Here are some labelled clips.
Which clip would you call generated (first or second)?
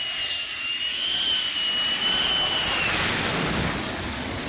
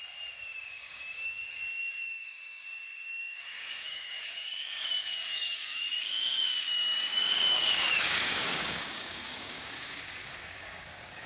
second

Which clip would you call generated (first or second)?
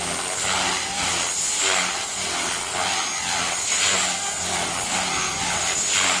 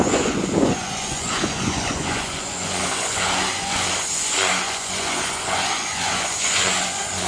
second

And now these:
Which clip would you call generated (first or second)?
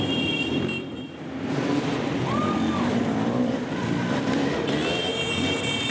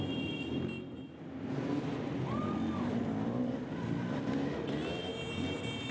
first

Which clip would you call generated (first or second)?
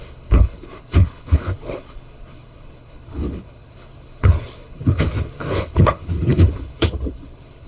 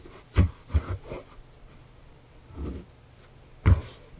first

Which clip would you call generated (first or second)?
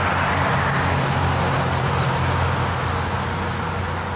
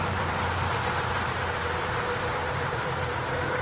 second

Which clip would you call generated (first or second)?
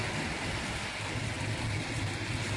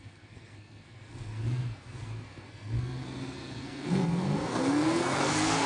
second